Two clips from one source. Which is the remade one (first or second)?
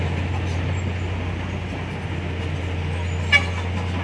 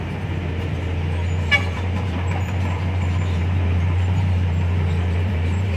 second